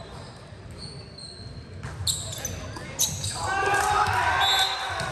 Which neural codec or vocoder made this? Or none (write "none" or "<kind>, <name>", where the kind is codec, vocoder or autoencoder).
none